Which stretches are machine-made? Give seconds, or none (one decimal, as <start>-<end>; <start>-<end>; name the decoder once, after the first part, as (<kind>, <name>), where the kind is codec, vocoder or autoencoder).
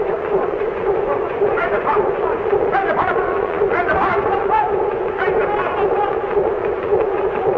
0.0-5.4 (vocoder, Vocos); 6.1-7.6